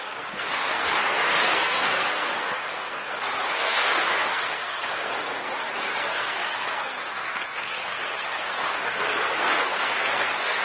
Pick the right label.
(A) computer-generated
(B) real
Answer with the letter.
A